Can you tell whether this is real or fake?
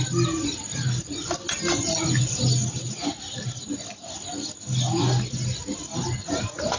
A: real